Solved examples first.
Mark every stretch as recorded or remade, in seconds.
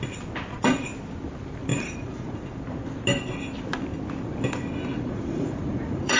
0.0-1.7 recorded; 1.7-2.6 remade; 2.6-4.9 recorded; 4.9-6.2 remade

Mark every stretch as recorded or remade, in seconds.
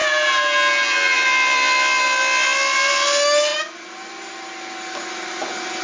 0.0-5.8 recorded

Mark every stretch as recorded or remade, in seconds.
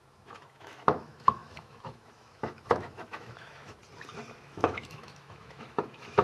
0.0-3.8 remade; 3.8-4.4 recorded; 4.4-6.2 remade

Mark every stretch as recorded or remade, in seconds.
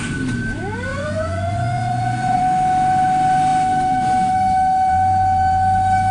0.0-0.9 recorded; 0.9-2.4 remade; 2.4-6.1 recorded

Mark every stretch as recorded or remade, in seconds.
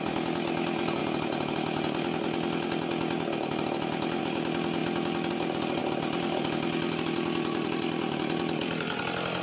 0.0-5.8 recorded; 5.8-9.0 remade; 9.0-9.4 recorded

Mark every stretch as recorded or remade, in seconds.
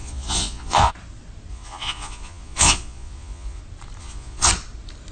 0.0-0.9 remade; 0.9-1.5 recorded; 1.5-3.6 remade; 3.6-4.0 recorded; 4.0-4.5 remade; 4.5-5.1 recorded